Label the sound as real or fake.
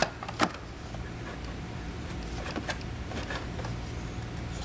real